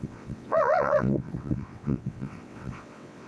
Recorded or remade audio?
remade